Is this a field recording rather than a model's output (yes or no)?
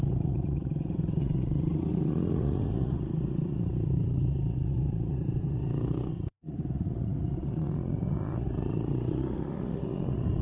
no